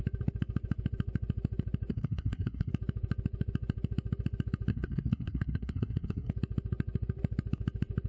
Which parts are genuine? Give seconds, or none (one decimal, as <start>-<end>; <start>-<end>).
0.0-1.9; 2.7-4.7; 6.3-8.1